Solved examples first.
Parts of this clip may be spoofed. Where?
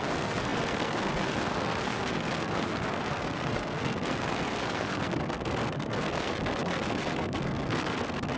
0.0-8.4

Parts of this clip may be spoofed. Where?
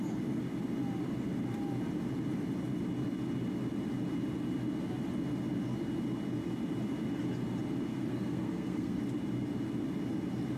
7.9-9.0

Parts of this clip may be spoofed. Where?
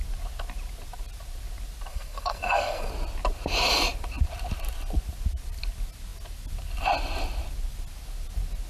1.9-2.9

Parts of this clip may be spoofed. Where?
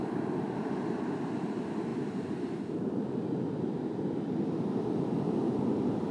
none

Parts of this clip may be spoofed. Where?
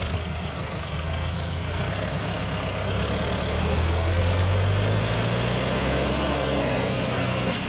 0.0-2.3; 3.6-4.4; 6.1-7.7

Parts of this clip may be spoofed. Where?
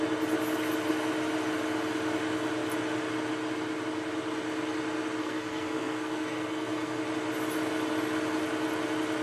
5.2-7.0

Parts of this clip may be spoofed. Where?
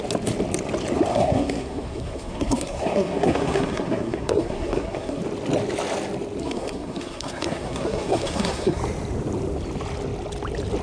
1.1-5.2; 6.4-8.8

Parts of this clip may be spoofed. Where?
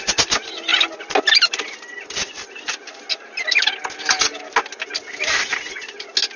none